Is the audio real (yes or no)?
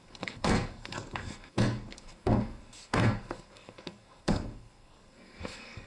no